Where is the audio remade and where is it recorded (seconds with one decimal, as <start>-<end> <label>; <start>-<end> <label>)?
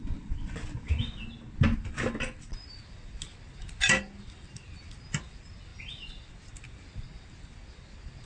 0.0-8.3 recorded